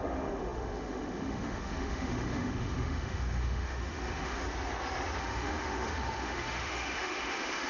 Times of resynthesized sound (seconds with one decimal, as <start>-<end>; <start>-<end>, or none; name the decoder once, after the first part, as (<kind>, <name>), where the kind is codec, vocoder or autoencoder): 0.0-4.4 (autoencoder, DAC-VAE); 5.2-7.7